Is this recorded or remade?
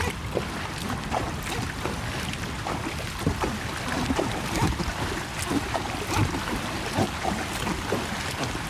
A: recorded